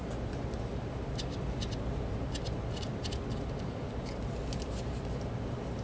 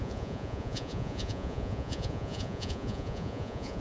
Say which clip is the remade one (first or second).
second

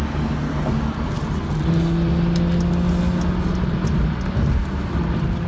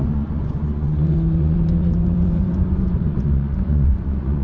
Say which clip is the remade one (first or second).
second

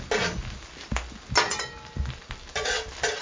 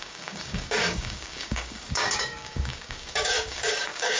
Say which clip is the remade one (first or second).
second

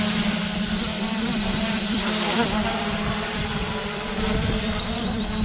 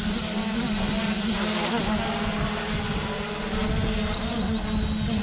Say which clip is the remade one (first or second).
first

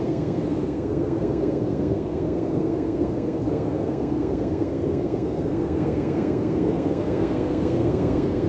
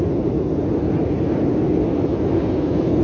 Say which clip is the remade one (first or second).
first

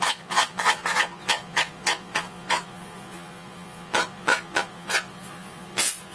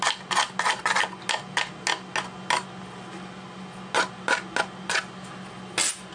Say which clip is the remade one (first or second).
first